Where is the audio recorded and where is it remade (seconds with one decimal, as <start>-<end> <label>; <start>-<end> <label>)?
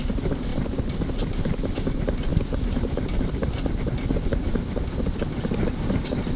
0.0-6.4 recorded